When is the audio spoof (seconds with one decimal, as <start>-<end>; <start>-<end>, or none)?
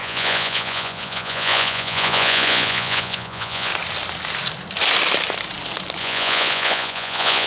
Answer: 0.0-3.7; 6.0-7.5